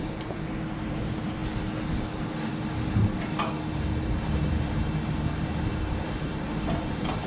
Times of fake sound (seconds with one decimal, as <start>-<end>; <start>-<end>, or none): 0.0-1.4; 4.0-7.3